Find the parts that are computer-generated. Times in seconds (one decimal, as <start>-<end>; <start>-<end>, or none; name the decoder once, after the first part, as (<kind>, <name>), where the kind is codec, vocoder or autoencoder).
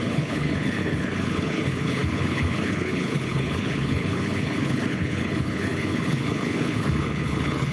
0.0-7.7 (codec, HILCodec)